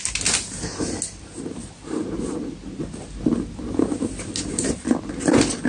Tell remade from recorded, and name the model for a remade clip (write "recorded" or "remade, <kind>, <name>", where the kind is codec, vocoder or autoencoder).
recorded